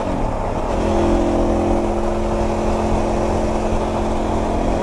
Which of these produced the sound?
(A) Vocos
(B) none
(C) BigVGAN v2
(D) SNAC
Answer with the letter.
B